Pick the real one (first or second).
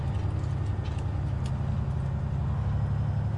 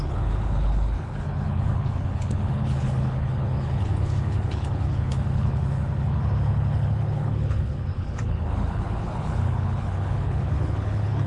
first